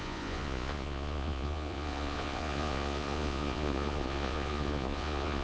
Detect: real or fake fake